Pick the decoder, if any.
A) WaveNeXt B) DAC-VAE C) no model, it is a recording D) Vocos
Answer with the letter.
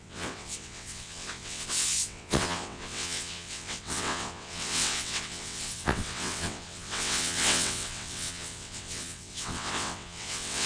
A